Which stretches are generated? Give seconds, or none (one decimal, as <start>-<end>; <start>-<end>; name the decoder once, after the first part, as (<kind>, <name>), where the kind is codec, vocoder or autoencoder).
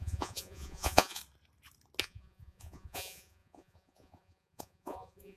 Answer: 0.0-1.2 (vocoder, Vocos); 2.0-5.4